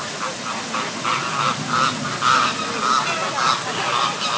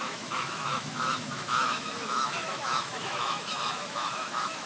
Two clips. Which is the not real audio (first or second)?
second